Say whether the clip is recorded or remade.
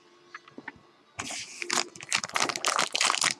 recorded